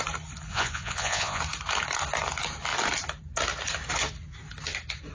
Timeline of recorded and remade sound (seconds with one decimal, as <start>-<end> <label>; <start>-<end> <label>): 0.0-0.5 recorded; 0.5-1.4 remade; 1.4-5.1 recorded